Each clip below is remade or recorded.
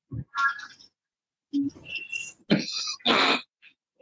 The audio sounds recorded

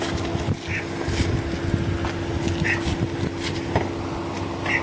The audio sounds recorded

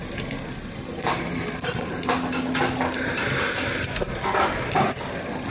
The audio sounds recorded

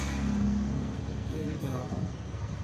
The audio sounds remade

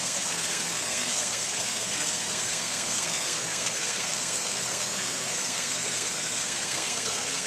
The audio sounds remade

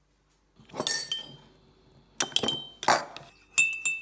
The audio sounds recorded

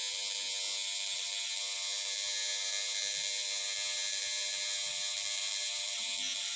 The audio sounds recorded